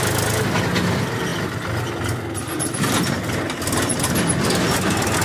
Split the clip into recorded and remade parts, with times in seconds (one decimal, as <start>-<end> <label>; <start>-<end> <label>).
0.0-5.2 recorded